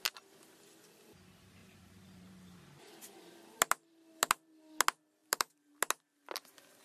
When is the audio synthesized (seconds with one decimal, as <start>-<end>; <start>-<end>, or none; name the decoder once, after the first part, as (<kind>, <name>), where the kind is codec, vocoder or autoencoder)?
1.6-2.9 (vocoder, BigVGAN v2); 5.2-5.8